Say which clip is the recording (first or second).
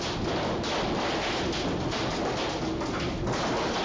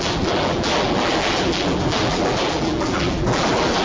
first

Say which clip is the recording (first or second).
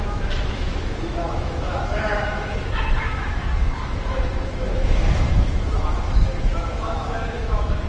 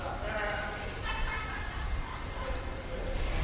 second